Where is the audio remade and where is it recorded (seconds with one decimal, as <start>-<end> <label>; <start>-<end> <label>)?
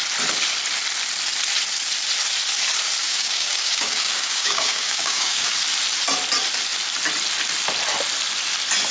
0.0-3.0 recorded; 3.0-5.6 remade; 5.6-8.9 recorded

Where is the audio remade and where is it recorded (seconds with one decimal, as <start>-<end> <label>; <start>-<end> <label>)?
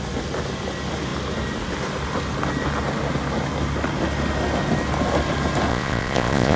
0.0-5.7 recorded; 5.7-6.6 remade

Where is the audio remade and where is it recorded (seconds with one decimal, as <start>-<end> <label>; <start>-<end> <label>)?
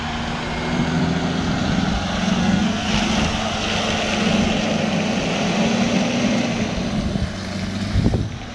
0.0-2.4 recorded; 2.4-3.0 remade; 3.0-8.5 recorded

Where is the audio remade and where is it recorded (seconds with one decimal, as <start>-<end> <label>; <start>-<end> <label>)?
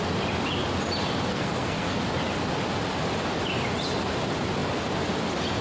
0.0-1.3 recorded; 1.3-2.0 remade; 2.0-5.6 recorded